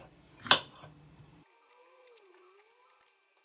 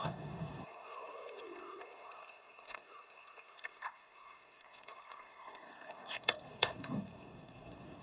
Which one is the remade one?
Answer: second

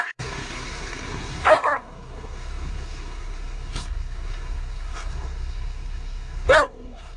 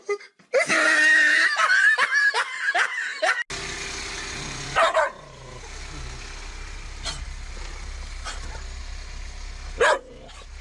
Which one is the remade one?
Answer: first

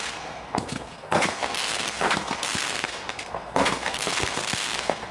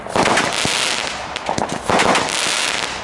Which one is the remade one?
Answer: first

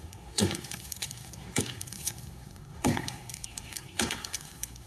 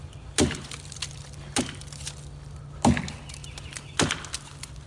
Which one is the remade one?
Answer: first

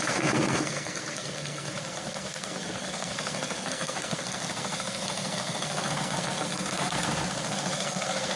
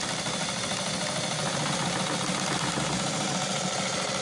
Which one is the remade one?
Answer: first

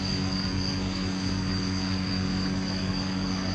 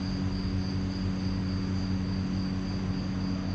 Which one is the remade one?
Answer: first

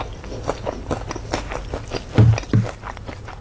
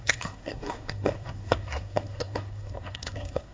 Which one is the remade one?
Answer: second